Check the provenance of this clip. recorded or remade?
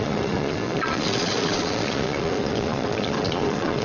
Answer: remade